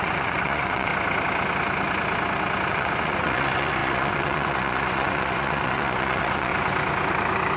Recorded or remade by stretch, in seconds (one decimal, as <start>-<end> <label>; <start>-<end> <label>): 0.0-0.9 remade; 0.9-2.7 recorded; 2.7-6.5 remade; 6.5-7.6 recorded